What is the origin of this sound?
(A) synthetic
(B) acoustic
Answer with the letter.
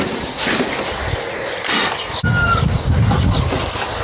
B